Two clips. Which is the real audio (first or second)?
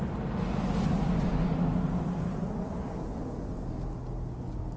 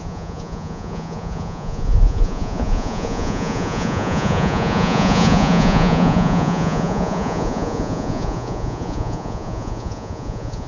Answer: first